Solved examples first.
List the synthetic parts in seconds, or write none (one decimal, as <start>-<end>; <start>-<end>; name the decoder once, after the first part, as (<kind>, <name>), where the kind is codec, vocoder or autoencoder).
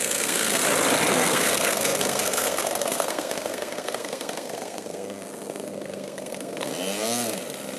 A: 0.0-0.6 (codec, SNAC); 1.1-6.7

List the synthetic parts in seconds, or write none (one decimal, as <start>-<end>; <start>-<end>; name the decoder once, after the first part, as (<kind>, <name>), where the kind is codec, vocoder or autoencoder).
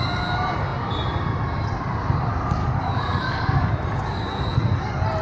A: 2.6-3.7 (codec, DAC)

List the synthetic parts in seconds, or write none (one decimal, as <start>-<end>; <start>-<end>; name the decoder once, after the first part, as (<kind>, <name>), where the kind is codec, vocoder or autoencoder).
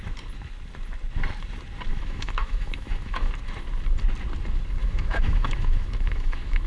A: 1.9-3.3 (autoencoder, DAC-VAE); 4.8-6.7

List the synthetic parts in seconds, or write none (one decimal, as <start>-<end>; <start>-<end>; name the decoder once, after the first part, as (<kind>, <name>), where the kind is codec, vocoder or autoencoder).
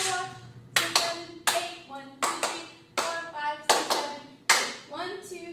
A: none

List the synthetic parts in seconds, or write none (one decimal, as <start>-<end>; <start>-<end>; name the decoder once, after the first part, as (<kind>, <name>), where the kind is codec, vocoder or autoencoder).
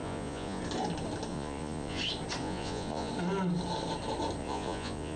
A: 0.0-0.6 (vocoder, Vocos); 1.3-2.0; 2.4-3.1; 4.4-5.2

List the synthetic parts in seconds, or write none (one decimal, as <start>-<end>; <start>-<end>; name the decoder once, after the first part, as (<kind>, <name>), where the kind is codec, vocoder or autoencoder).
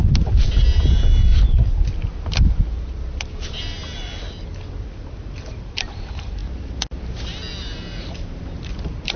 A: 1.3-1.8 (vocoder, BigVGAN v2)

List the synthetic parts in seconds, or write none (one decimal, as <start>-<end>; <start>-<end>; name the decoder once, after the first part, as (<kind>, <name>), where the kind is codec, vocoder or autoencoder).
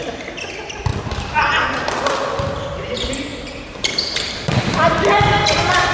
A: 3.3-5.1 (vocoder, BigVGAN v2)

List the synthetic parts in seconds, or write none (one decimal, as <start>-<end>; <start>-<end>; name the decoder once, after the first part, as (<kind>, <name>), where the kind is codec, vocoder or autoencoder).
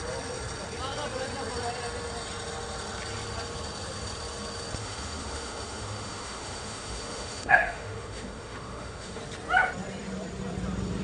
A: 4.8-9.2 (autoencoder, DAC-VAE)